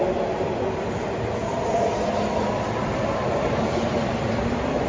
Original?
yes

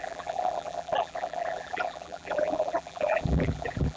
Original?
no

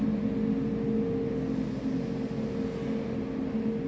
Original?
yes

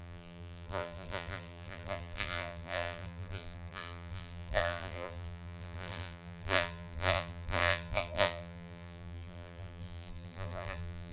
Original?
no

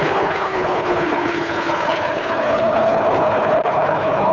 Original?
no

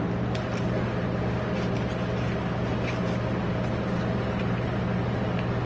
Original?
yes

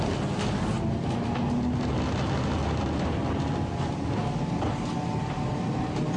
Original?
yes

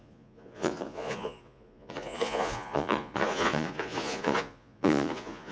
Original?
no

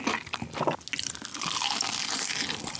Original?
yes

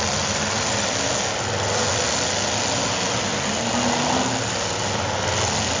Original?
yes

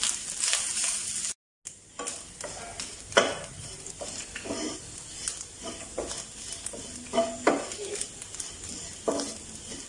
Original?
yes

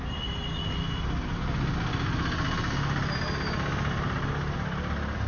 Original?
yes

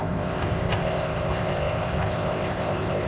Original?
no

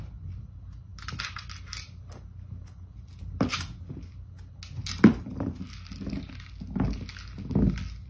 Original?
yes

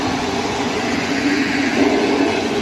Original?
no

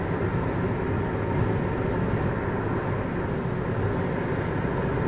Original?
yes